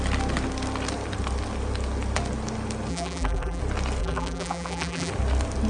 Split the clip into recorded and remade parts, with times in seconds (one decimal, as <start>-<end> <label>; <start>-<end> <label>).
0.0-2.9 recorded; 2.9-3.6 remade; 3.6-4.0 recorded; 4.0-5.1 remade; 5.1-5.7 recorded